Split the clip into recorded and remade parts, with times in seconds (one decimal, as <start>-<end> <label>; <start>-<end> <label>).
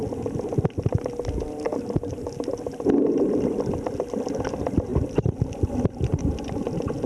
0.0-7.1 recorded